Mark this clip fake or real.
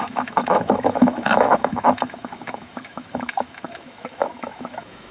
fake